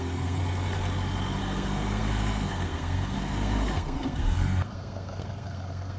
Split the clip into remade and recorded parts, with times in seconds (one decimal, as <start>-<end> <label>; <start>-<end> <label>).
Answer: 0.0-0.4 remade; 0.4-1.4 recorded; 1.4-6.0 remade